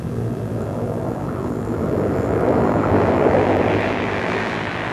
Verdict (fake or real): fake